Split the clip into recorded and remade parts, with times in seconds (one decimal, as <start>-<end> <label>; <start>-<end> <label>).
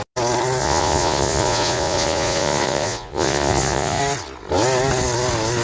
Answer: 0.0-0.6 recorded; 0.6-4.0 remade; 4.0-5.6 recorded